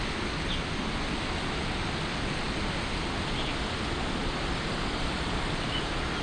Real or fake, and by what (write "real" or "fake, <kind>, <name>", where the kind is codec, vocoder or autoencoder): real